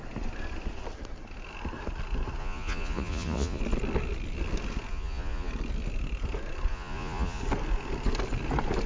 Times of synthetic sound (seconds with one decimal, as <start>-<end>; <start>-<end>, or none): 2.4-3.6; 4.9-5.5; 6.7-7.4